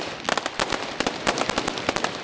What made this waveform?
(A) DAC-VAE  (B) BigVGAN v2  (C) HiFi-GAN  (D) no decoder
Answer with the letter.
D